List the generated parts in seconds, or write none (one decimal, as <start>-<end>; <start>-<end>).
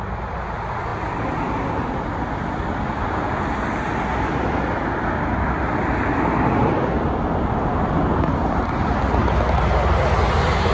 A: none